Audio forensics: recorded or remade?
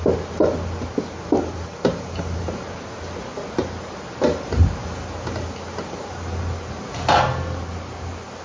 recorded